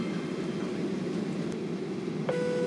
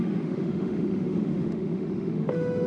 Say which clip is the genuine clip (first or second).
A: first